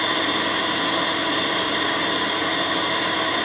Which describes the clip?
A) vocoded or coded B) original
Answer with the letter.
A